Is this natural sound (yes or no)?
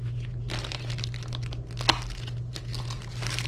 yes